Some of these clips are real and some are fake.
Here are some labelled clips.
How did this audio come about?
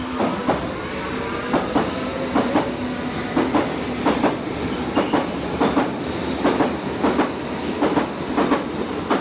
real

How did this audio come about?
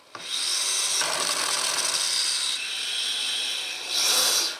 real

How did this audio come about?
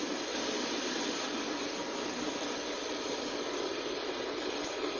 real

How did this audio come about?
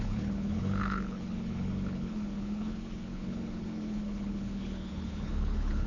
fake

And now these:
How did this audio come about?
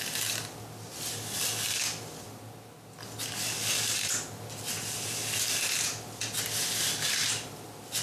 real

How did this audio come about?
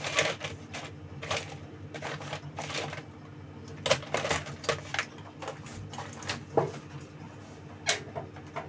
real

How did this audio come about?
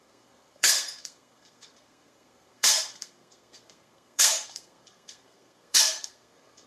fake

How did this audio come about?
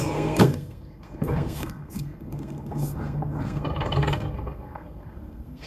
fake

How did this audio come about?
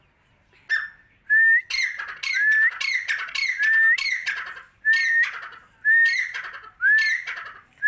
real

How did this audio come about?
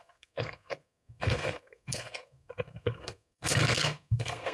fake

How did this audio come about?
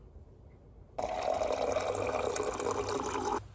real